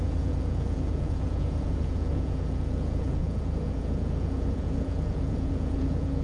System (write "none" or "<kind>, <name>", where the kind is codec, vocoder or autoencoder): vocoder, Vocos